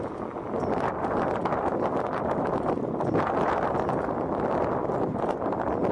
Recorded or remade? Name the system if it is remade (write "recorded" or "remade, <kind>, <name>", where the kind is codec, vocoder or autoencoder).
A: recorded